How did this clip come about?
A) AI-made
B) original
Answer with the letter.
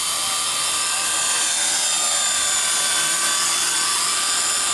B